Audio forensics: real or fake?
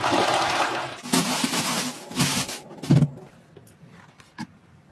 real